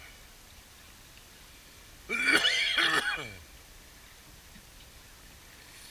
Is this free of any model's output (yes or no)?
yes